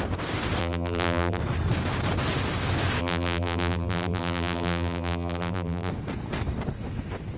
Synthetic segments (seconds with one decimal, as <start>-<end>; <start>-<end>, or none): 0.6-1.4; 3.0-5.9